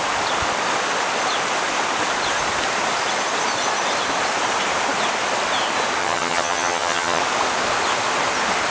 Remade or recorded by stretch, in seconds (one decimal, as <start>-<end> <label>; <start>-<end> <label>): 0.0-6.0 recorded; 6.0-7.2 remade; 7.2-8.7 recorded